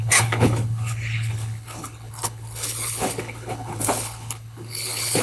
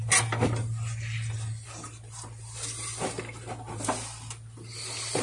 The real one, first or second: second